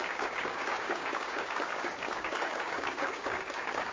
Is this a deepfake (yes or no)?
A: yes